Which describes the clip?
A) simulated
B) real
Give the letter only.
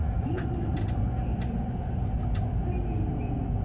B